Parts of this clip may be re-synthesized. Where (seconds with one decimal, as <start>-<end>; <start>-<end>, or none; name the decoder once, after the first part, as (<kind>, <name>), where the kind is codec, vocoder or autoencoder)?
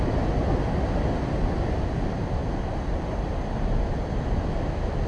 none